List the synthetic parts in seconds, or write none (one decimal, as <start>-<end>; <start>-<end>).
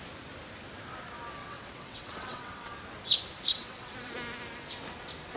1.4-2.7; 3.5-4.1